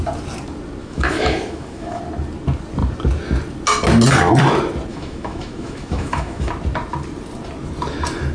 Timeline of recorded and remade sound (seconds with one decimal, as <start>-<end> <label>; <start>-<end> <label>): 0.0-0.8 recorded; 0.8-2.0 remade; 2.0-4.9 recorded; 4.9-6.5 remade; 6.5-8.3 recorded